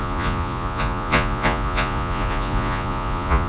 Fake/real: fake